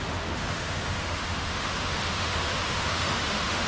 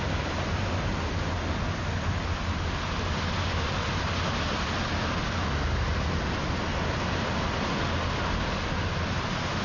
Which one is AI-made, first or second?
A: first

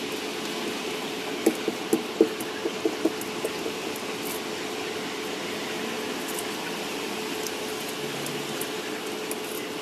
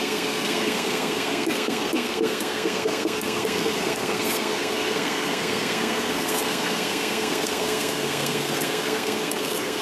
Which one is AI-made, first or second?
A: second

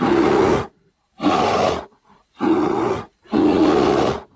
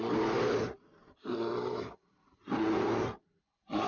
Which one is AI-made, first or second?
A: first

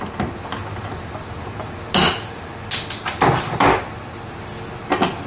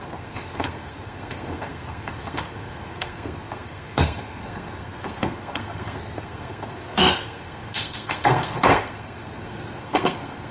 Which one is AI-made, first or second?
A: second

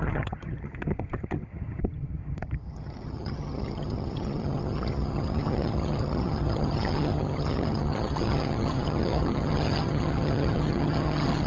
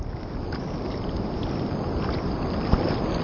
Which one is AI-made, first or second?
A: first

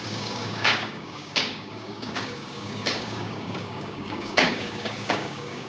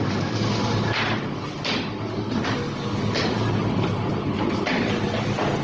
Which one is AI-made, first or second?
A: first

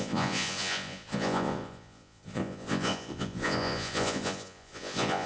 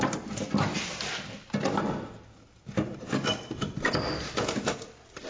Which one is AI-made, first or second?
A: first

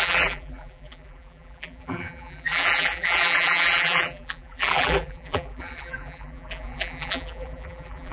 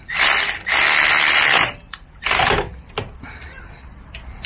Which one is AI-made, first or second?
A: first